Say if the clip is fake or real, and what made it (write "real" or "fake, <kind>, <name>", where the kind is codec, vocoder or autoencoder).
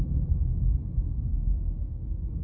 fake, codec, SNAC